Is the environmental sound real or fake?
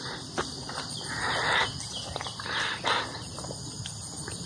real